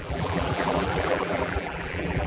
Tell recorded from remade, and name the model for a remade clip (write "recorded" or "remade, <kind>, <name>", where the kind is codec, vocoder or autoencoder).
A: remade, vocoder, BigVGAN v2